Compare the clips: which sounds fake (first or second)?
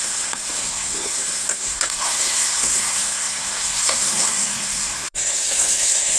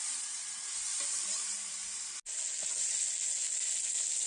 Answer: first